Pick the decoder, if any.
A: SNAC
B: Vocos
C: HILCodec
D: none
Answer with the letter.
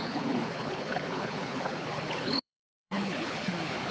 C